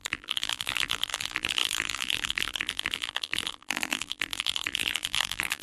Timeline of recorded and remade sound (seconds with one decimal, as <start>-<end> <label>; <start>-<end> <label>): 0.0-5.6 remade